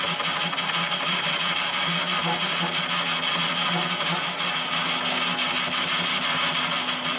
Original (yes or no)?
yes